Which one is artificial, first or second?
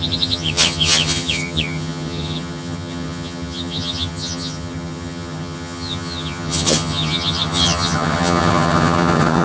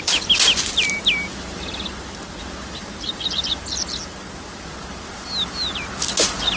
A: first